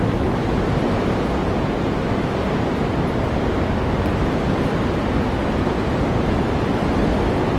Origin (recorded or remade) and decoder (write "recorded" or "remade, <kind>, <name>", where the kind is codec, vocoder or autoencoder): recorded